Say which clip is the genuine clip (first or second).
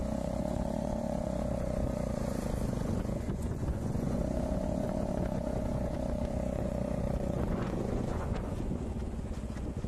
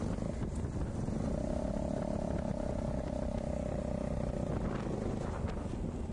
second